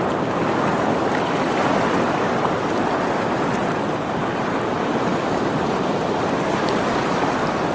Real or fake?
real